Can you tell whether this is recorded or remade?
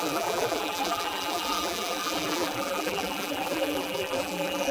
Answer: remade